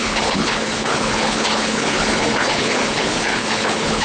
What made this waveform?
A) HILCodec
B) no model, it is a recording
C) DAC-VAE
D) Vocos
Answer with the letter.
A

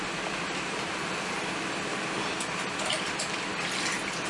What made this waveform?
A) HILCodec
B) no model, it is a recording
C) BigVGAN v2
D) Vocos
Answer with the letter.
B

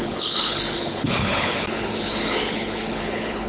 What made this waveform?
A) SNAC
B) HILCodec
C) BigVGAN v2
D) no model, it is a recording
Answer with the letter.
B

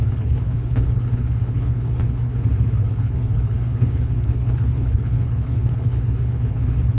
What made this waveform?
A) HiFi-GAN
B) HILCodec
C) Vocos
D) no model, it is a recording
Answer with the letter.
B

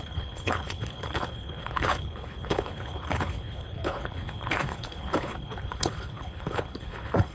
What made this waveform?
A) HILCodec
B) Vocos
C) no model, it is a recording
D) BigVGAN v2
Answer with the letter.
A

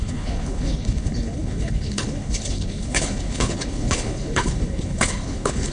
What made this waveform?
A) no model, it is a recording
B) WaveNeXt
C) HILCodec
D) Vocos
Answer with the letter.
C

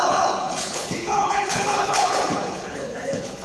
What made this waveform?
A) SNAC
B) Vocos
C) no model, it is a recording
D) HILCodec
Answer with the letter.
D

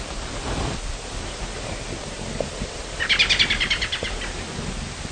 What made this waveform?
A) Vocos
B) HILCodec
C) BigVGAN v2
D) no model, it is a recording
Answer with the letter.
D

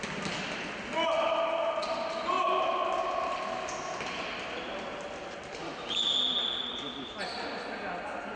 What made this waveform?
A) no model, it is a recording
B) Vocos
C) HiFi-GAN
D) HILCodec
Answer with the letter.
A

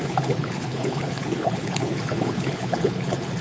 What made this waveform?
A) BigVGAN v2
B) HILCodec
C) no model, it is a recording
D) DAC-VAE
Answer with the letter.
B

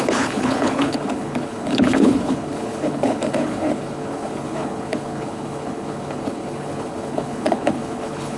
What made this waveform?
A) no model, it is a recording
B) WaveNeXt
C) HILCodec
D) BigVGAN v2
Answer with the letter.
C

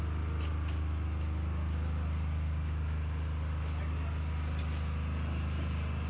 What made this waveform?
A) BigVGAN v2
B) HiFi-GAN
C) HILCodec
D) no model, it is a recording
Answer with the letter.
D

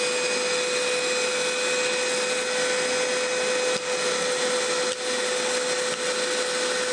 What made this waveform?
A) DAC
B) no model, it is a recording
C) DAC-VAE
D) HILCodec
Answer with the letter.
B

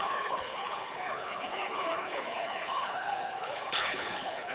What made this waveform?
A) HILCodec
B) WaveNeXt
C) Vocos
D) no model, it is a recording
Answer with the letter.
A